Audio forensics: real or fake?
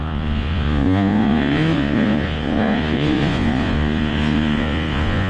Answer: fake